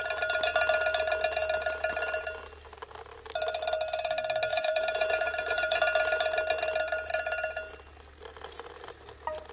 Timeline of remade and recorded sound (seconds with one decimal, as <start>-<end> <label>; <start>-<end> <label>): 0.0-4.5 recorded; 4.5-5.8 remade; 5.8-9.5 recorded